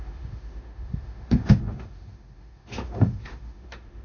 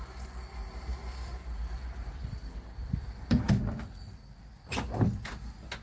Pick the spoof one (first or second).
first